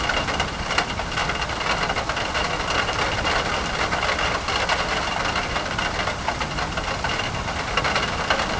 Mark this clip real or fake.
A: real